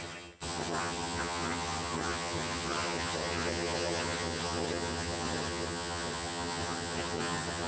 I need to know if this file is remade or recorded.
remade